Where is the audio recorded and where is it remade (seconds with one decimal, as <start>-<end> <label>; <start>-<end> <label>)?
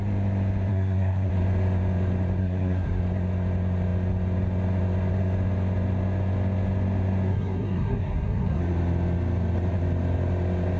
0.0-0.7 recorded; 0.7-1.3 remade; 1.3-2.4 recorded; 2.4-3.0 remade; 3.0-7.3 recorded; 7.3-8.6 remade; 8.6-10.8 recorded